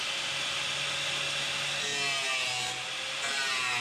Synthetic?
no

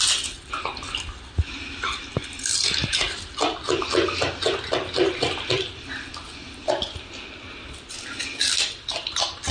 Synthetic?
no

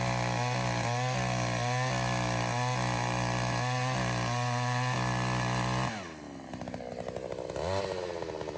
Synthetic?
no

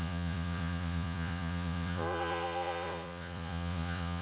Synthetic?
yes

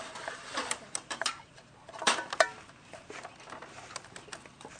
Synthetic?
no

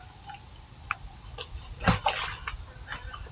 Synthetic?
no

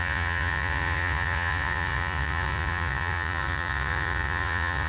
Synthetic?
yes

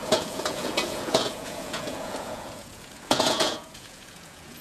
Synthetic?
yes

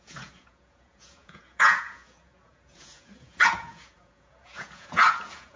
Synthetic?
yes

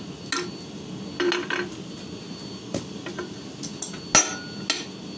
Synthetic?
no